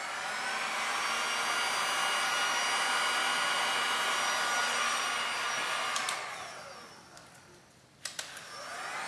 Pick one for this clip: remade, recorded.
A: recorded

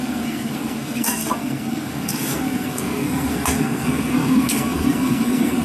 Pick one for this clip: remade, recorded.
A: remade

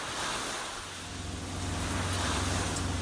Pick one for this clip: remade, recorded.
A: recorded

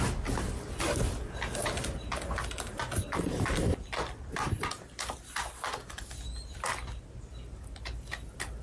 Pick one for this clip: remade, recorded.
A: recorded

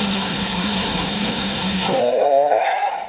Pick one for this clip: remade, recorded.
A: remade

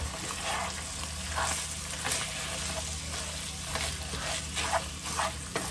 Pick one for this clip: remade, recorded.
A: recorded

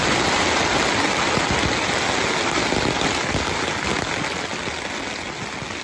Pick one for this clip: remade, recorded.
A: recorded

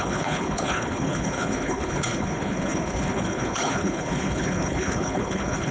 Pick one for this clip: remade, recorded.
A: remade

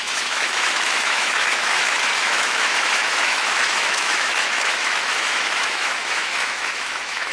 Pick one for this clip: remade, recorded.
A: remade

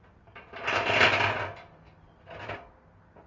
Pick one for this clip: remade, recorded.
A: recorded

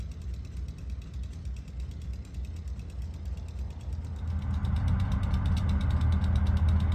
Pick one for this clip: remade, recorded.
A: recorded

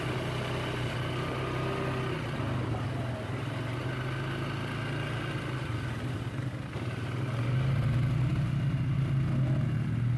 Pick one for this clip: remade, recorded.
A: recorded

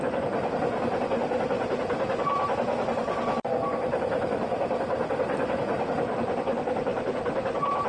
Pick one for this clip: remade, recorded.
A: recorded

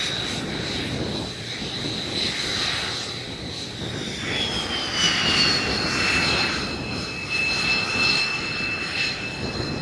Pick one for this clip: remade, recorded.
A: recorded